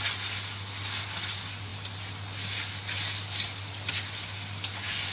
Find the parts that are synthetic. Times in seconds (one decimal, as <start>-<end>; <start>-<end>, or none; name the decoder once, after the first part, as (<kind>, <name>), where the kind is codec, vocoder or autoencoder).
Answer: none